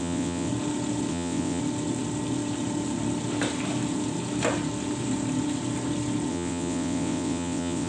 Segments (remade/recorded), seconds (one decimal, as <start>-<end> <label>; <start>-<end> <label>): 0.0-0.5 remade; 0.5-1.1 recorded; 1.1-1.6 remade; 1.6-6.3 recorded; 6.3-7.9 remade